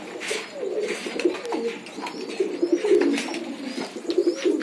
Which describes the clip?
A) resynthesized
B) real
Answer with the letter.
B